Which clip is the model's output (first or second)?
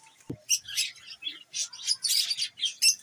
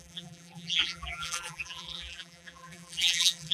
second